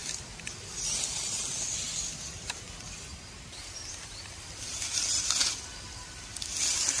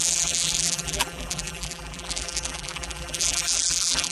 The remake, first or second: second